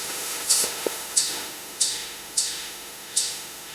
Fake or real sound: fake